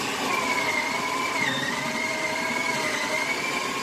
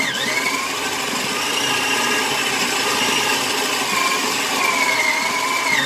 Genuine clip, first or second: second